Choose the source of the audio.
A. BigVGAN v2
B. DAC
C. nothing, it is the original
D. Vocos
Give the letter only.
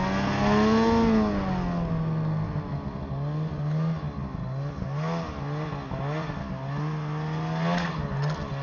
C